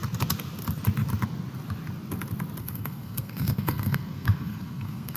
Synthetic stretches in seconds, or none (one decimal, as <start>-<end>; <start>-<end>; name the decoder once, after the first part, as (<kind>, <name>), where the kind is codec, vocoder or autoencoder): 2.6-5.2 (codec, SNAC)